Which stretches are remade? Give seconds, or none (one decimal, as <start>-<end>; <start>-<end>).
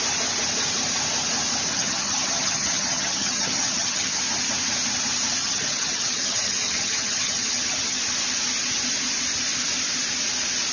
1.7-4.2; 5.4-8.0